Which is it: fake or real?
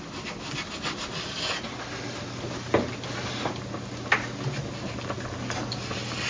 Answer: real